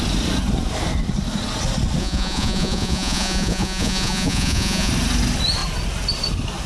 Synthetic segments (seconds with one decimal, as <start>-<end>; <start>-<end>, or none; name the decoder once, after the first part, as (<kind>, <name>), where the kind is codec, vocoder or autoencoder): 2.0-4.9 (vocoder, Vocos)